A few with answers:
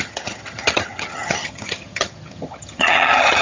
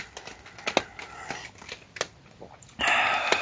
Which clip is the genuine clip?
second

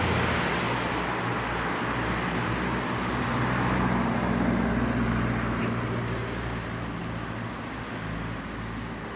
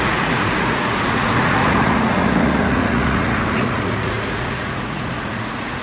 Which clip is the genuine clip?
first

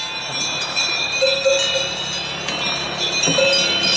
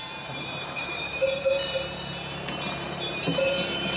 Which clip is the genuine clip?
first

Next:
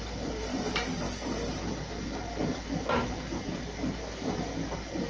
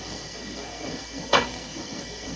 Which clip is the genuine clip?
first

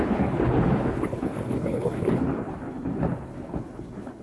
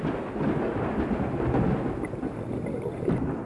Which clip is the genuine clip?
second